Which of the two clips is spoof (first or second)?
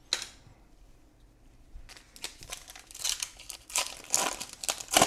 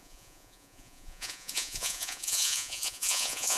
second